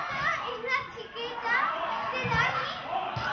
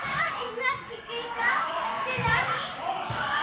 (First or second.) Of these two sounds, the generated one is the second